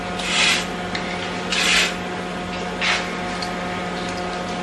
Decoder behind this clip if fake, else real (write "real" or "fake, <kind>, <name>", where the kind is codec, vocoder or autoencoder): real